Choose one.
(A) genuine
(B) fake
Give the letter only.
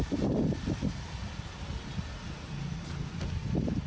A